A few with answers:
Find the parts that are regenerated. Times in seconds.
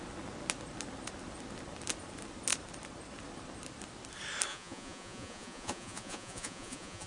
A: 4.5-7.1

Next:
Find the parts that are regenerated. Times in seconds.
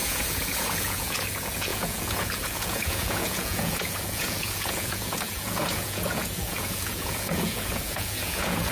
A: 0.0-8.7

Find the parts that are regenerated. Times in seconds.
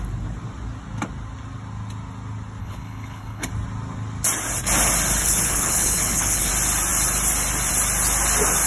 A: 2.6-3.5; 5.2-6.5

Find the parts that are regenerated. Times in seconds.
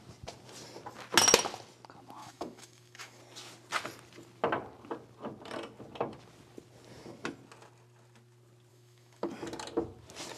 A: 2.2-3.2; 8.7-9.3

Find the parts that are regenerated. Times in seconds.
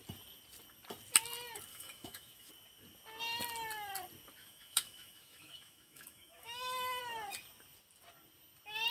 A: 1.7-2.5; 4.4-7.0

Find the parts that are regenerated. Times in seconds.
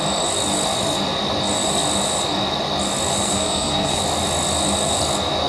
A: 3.1-4.0